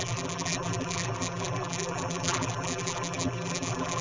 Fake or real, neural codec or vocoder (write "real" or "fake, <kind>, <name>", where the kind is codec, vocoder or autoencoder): fake, vocoder, BigVGAN v2